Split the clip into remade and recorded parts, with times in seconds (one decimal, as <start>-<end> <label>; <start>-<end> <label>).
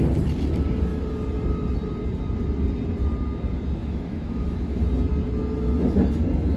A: 0.0-3.8 recorded; 3.8-4.8 remade; 4.8-6.6 recorded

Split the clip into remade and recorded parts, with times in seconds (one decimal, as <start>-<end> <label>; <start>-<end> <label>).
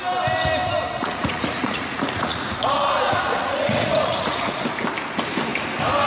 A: 0.0-0.9 recorded; 0.9-4.6 remade; 4.6-6.1 recorded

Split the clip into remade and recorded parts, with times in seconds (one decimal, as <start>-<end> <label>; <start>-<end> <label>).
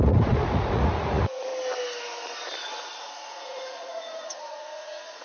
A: 0.0-1.5 remade; 1.5-3.0 recorded; 3.0-5.2 remade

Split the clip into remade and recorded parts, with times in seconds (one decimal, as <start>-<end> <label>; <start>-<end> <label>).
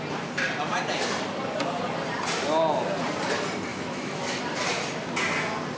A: 0.0-3.7 recorded; 3.7-4.4 remade; 4.4-5.8 recorded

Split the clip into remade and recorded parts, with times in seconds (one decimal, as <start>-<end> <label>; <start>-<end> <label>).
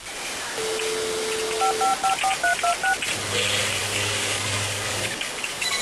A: 0.0-3.8 recorded; 3.8-5.8 remade